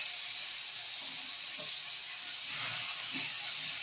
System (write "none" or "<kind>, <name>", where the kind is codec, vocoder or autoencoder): none